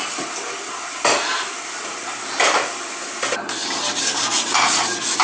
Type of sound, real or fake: real